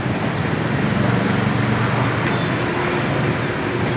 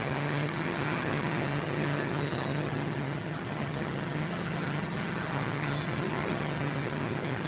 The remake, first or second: second